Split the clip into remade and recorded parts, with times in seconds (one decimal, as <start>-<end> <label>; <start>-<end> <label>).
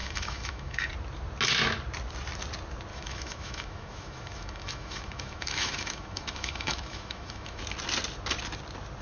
0.0-0.9 remade; 0.9-2.9 recorded; 2.9-7.6 remade; 7.6-9.0 recorded